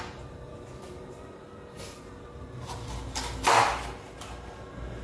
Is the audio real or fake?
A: real